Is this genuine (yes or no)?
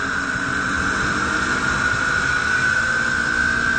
yes